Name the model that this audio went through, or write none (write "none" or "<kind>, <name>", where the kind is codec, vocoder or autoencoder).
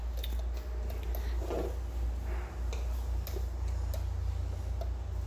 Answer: none